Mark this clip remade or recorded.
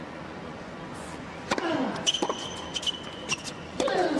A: remade